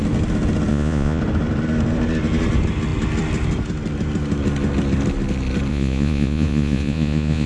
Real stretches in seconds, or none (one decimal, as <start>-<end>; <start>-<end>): 0.0-0.7; 1.2-5.7